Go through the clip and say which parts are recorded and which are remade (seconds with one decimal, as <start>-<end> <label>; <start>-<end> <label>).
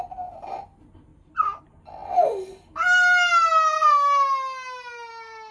0.0-5.5 recorded